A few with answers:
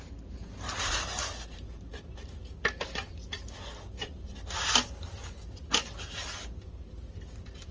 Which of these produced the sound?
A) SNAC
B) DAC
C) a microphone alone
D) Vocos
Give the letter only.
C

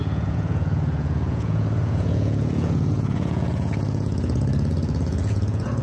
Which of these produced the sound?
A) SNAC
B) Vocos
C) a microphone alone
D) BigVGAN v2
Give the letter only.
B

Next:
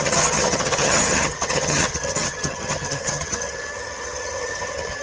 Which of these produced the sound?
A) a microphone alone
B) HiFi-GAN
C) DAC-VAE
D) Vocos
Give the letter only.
B